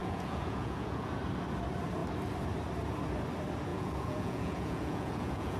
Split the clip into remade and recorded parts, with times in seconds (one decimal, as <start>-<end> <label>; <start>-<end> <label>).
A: 0.0-1.2 remade; 1.2-3.7 recorded; 3.7-5.6 remade